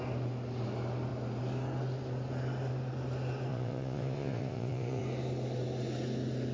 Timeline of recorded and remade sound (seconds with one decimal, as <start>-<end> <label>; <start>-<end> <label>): 0.0-3.5 recorded; 3.5-5.0 remade; 5.0-6.5 recorded